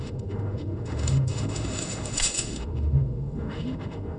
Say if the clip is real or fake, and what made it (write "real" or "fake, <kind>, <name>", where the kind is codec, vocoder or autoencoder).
fake, autoencoder, DAC-VAE